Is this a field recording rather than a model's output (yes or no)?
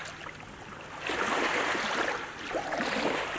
yes